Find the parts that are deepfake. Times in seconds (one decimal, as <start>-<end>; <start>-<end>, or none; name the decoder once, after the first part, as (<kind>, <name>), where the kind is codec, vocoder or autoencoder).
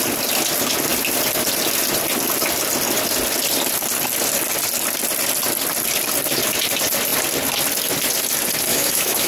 8.7-9.3 (autoencoder, DAC-VAE)